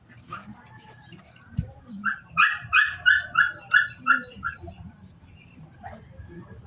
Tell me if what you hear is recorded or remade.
remade